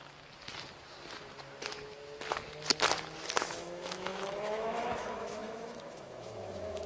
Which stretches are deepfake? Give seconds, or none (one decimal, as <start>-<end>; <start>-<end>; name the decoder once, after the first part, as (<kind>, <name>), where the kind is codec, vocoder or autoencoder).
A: 3.4-6.9 (autoencoder, DAC-VAE)